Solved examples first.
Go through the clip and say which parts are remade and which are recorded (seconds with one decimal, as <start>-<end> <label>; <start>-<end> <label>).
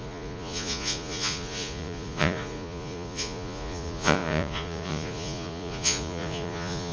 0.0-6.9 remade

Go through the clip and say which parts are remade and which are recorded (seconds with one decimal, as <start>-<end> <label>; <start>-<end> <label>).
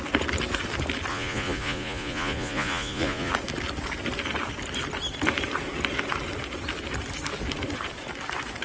0.0-1.1 recorded; 1.1-3.3 remade; 3.3-8.6 recorded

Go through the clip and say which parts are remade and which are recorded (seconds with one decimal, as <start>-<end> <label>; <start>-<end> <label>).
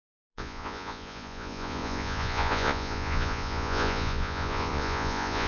0.0-5.5 remade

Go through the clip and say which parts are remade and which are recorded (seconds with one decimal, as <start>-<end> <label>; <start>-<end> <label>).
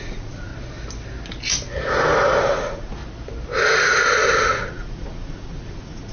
0.0-0.5 remade; 0.5-2.4 recorded; 2.4-3.0 remade; 3.0-4.4 recorded; 4.4-6.1 remade